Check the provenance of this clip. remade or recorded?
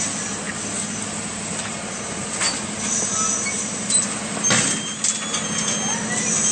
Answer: recorded